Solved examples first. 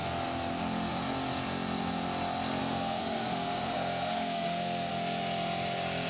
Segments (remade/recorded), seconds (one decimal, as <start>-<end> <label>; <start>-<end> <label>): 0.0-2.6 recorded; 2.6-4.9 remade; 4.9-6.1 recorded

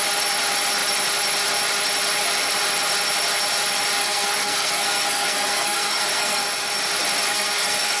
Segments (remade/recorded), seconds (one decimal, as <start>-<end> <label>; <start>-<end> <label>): 0.0-4.0 recorded; 4.0-6.4 remade; 6.4-7.3 recorded; 7.3-8.0 remade

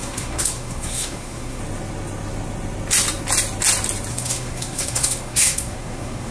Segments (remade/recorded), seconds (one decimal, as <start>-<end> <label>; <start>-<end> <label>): 0.0-1.6 remade; 1.6-4.1 recorded; 4.1-6.3 remade

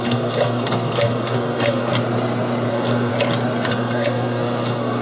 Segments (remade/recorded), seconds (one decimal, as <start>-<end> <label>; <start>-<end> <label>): 0.0-1.9 remade; 1.9-2.7 recorded; 2.7-3.1 remade; 3.1-3.7 recorded; 3.7-5.0 remade